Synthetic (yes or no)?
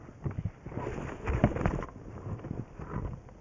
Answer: no